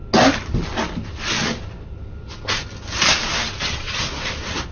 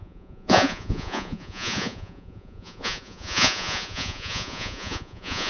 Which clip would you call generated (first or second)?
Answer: second